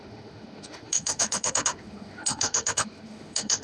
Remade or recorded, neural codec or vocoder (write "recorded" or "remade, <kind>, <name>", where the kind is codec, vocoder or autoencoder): remade, autoencoder, DAC-VAE